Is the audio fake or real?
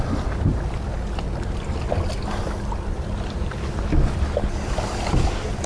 real